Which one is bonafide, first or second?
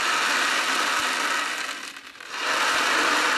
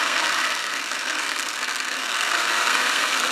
first